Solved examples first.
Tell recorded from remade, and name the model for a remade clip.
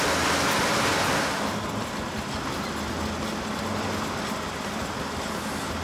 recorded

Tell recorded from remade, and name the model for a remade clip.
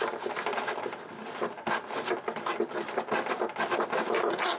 recorded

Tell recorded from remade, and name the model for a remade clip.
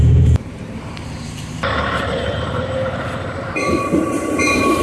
remade, vocoder, BigVGAN v2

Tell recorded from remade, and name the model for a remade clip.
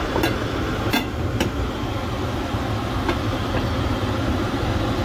recorded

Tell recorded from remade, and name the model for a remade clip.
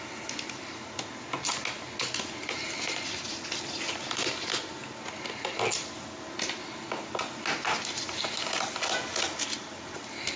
recorded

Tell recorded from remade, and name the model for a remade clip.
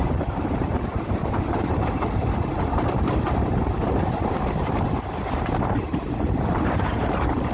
remade, vocoder, BigVGAN v2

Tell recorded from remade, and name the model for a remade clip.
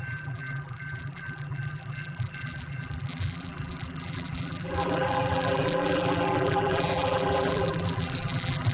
remade, vocoder, BigVGAN v2